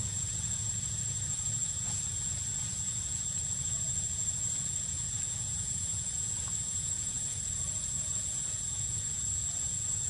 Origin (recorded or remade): remade